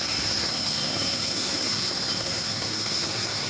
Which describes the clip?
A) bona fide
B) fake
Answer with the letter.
B